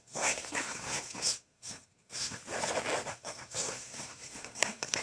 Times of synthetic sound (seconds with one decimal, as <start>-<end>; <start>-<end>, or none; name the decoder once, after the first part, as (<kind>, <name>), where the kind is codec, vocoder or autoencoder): 0.0-2.4 (codec, SNAC); 3.1-5.0